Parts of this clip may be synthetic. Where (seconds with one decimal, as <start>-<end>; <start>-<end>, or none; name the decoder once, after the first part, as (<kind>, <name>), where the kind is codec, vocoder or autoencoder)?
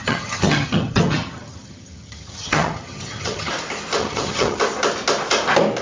0.0-3.5 (vocoder, HiFi-GAN); 4.0-4.6